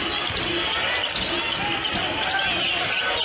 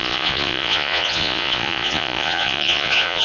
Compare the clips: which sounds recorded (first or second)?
first